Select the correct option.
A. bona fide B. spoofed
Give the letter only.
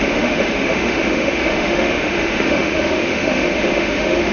B